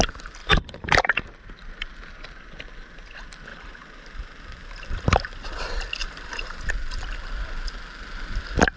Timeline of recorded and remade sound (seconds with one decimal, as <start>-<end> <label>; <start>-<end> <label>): 0.0-0.4 recorded; 0.4-1.1 remade; 1.1-3.5 recorded; 3.5-5.6 remade; 5.6-6.0 recorded; 6.0-6.7 remade; 6.7-8.8 recorded